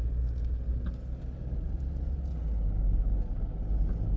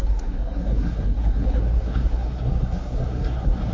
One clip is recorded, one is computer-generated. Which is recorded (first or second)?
first